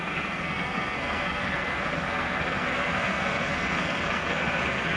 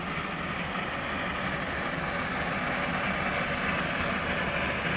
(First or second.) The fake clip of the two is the first